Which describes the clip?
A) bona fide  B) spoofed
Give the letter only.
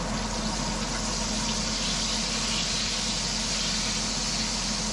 A